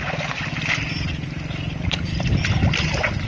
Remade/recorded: recorded